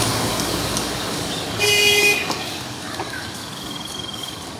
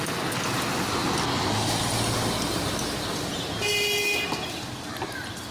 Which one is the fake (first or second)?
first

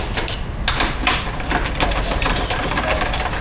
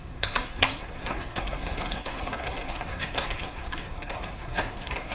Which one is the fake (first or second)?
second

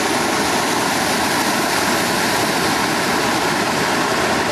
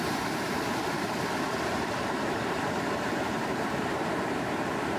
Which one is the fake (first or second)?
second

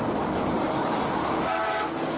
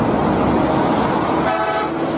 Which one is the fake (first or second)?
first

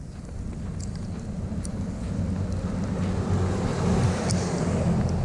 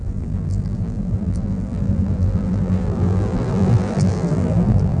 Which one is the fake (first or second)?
second